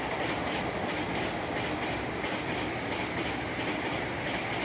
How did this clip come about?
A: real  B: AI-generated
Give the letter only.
A